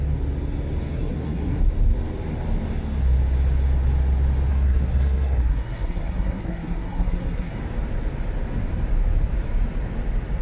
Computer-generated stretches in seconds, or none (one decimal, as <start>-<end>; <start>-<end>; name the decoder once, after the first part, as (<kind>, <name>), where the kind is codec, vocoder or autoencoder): 0.9-1.6 (codec, SNAC); 4.5-7.6